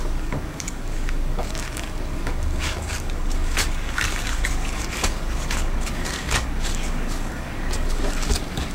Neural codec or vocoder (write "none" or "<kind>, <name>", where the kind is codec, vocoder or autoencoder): codec, DAC